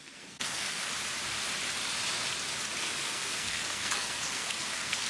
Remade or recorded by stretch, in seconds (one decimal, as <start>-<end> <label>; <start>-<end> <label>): 0.0-0.9 remade; 0.9-2.8 recorded; 2.8-5.1 remade